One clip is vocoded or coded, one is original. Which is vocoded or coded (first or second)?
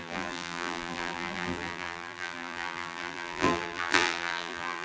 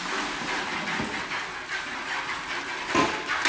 first